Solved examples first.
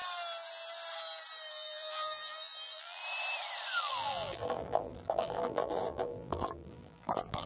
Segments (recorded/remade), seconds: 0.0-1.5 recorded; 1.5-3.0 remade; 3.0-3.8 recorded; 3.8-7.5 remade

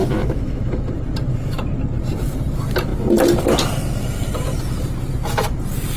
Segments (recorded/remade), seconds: 0.0-0.9 remade; 0.9-6.0 recorded

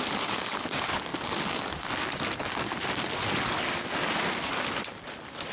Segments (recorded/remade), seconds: 0.0-5.5 recorded